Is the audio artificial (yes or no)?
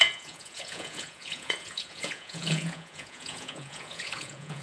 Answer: yes